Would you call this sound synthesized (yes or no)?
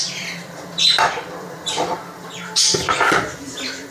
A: yes